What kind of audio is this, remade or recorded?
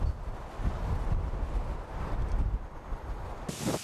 recorded